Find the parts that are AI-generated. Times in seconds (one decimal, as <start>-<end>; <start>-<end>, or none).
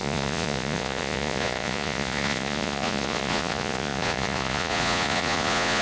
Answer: 0.0-5.8